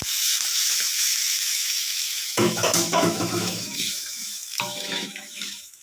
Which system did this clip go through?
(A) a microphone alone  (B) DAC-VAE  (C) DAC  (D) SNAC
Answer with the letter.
B